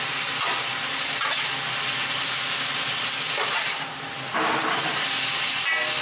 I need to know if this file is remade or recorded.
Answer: recorded